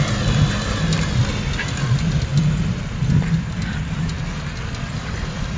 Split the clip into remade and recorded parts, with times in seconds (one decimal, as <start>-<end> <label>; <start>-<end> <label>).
0.0-5.6 recorded